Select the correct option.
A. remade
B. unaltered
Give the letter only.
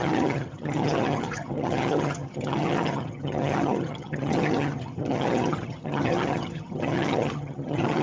A